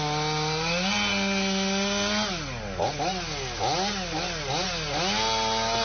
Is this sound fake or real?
real